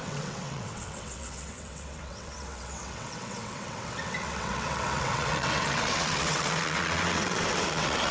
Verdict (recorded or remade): remade